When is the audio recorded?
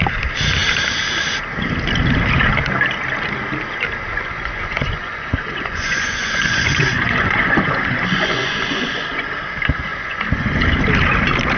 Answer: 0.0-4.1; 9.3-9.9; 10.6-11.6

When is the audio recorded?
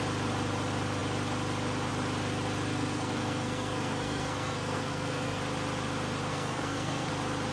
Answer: 0.0-2.7; 5.4-6.3; 7.1-7.5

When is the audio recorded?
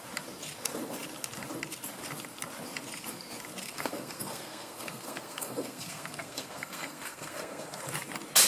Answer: 0.0-3.6; 7.8-8.5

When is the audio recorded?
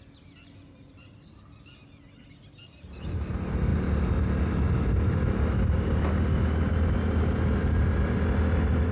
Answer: 0.0-8.9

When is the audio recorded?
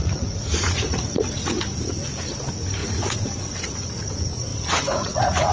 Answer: 2.2-2.8; 4.0-4.5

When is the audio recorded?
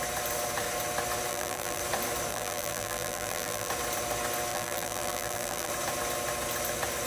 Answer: 0.0-1.3; 1.8-2.3; 3.7-4.5; 5.7-7.1